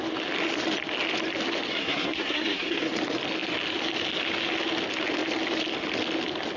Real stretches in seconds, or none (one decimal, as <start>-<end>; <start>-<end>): 0.0-1.7; 2.9-6.6